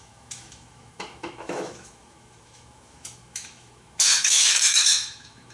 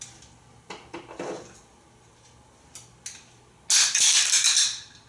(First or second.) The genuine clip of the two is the second